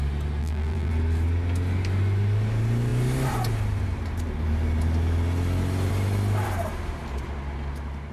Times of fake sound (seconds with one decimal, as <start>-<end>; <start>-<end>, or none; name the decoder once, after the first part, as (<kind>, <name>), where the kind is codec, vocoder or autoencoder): 0.4-0.9 (vocoder, BigVGAN v2)